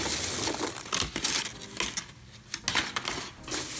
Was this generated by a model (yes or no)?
no